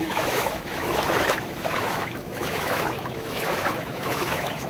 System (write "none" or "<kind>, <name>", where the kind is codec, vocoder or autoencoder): autoencoder, DAC-VAE